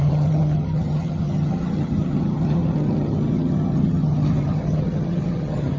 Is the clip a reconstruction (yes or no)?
yes